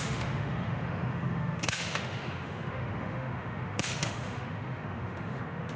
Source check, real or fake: fake